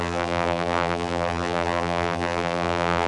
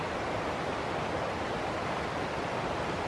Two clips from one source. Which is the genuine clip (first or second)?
second